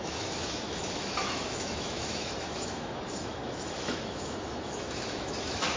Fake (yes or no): yes